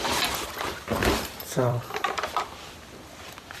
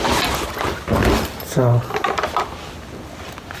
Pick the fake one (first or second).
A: first